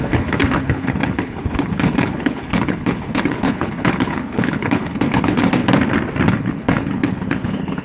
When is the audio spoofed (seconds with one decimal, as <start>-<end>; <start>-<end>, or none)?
0.0-5.6; 6.3-7.8